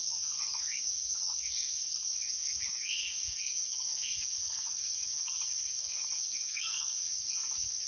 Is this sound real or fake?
fake